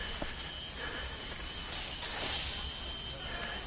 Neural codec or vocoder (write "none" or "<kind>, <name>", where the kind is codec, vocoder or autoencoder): none